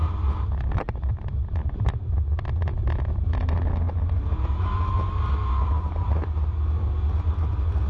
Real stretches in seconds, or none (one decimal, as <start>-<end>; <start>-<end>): 0.0-7.9